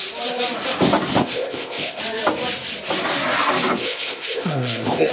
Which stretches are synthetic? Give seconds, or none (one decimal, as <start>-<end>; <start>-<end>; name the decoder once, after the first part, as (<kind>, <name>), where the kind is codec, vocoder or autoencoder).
1.2-2.0 (codec, ZipCodec); 3.8-5.1